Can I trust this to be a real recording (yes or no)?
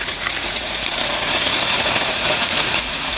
no